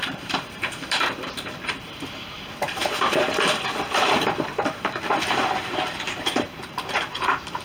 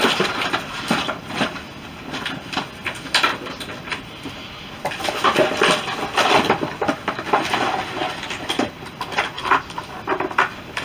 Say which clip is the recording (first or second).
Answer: second